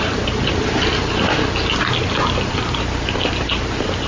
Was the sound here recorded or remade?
recorded